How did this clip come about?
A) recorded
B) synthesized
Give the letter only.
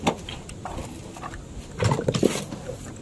A